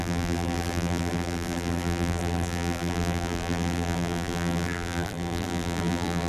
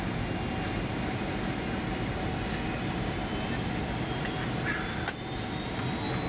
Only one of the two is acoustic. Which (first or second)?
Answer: second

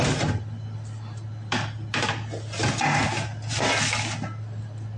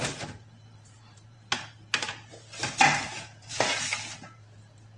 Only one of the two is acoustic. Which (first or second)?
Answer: first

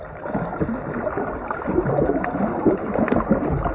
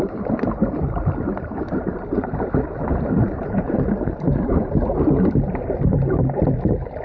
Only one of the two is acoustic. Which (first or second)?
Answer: first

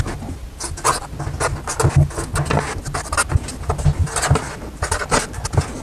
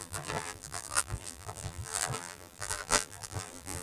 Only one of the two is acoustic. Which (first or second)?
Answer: first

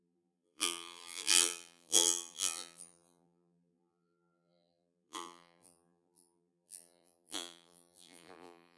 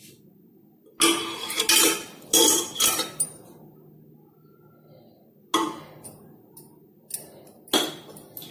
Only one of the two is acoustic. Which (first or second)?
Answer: second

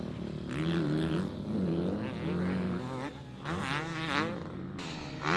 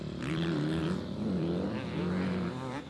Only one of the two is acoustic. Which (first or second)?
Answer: first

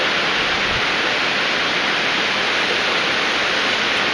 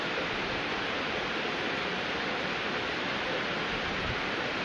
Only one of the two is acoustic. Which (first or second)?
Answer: first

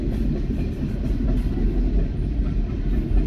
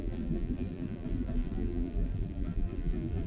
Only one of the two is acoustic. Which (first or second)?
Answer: first